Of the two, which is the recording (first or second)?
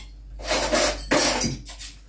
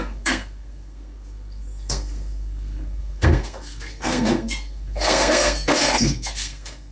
first